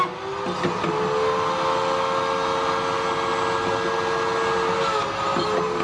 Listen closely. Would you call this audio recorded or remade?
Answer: recorded